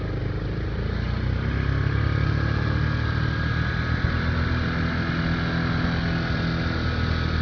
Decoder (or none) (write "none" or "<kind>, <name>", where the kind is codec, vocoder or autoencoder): none